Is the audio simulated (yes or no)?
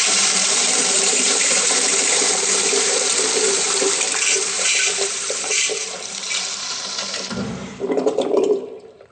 yes